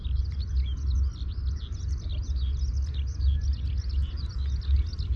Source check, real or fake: real